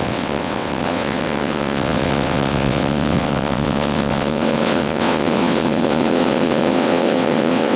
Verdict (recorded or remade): remade